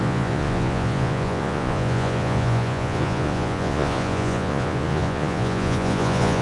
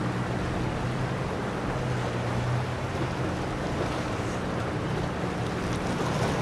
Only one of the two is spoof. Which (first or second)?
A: first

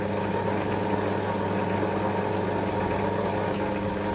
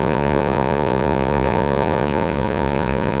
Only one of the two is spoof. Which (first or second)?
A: second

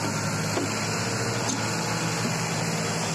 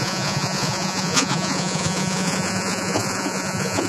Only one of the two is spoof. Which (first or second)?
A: second